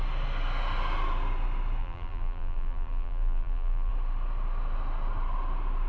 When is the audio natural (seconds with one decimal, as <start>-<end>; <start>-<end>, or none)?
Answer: 0.0-1.8; 3.9-5.9